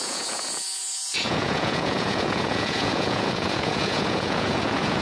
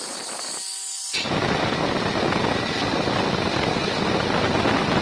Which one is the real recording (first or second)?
second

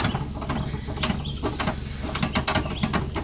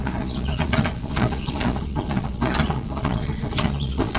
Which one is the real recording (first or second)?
first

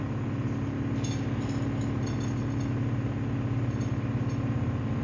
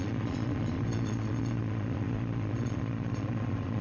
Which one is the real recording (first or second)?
first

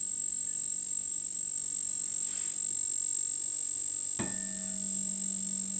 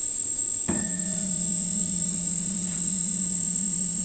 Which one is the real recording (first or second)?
first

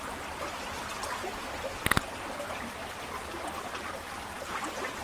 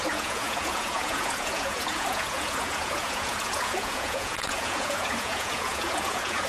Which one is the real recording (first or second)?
first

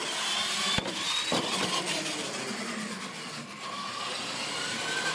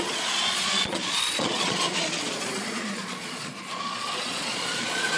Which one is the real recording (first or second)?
first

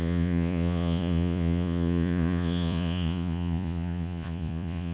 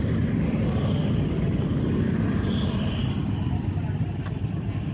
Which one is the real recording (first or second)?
second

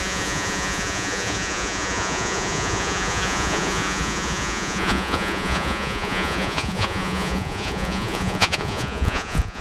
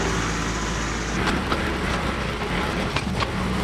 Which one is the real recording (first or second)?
second